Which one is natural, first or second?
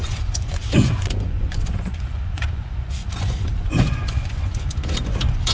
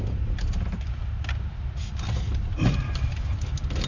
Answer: second